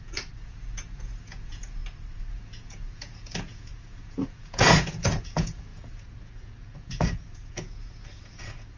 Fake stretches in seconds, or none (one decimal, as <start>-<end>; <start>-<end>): 0.0-1.8; 2.3-8.8